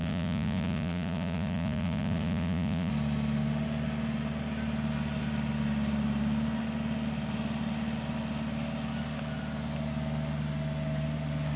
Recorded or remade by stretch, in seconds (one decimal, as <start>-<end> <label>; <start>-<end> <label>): 0.0-2.9 remade; 2.9-11.6 recorded